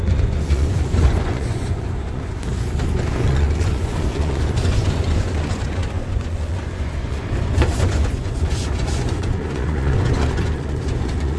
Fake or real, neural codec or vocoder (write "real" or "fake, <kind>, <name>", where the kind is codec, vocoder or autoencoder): fake, vocoder, Vocos